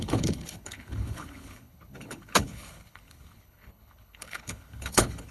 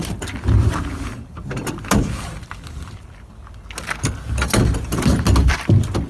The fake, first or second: first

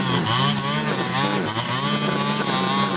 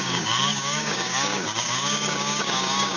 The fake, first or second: second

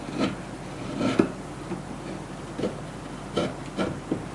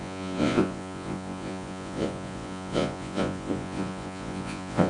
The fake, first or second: second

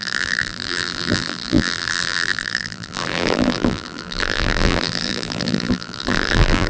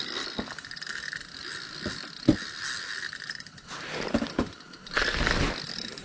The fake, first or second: first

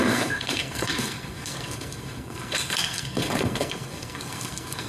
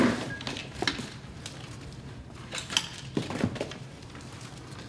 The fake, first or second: first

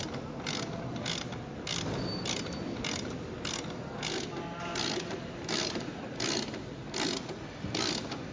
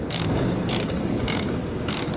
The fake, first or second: second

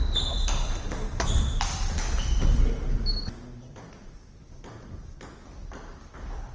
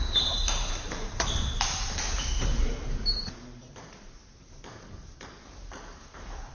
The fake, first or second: second